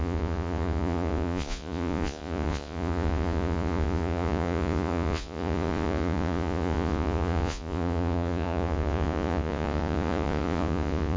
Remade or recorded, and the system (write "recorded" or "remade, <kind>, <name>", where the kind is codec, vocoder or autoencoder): remade, vocoder, Vocos